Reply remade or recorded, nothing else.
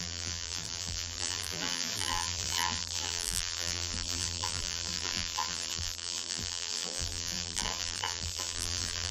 remade